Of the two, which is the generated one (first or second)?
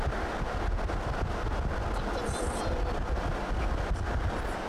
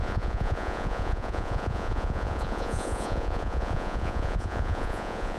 second